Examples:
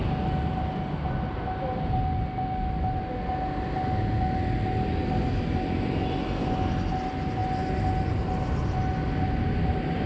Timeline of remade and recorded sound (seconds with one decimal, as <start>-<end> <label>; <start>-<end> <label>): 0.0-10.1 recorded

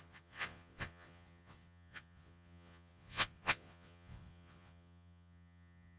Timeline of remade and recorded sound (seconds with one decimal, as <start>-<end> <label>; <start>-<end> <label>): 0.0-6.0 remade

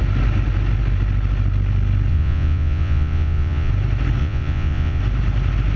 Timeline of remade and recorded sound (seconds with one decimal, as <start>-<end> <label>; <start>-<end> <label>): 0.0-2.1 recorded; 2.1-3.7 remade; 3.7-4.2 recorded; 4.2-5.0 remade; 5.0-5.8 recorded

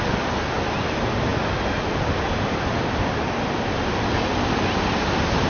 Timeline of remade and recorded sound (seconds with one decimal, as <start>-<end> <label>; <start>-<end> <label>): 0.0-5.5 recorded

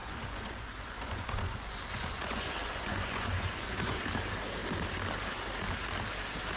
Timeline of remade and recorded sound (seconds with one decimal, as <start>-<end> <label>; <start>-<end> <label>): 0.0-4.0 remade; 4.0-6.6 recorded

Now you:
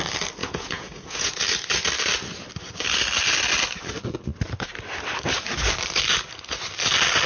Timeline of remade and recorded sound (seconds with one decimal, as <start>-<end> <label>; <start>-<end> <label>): 0.0-0.4 recorded; 0.4-1.3 remade; 1.3-7.3 recorded

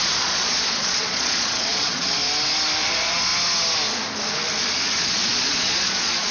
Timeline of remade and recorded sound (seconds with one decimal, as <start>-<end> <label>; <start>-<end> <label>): 0.0-2.2 remade; 2.2-2.8 recorded; 2.8-3.3 remade; 3.3-5.0 recorded; 5.0-6.3 remade

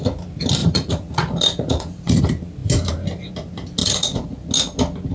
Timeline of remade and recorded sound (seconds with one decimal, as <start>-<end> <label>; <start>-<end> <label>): 0.0-0.6 recorded; 0.6-2.2 remade; 2.2-3.8 recorded; 3.8-4.5 remade; 4.5-5.1 recorded